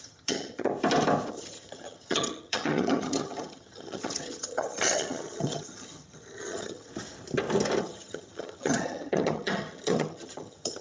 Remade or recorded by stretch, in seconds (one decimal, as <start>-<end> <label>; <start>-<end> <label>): 0.0-0.7 remade; 0.7-1.3 recorded; 1.3-6.9 remade; 6.9-7.8 recorded; 7.8-10.8 remade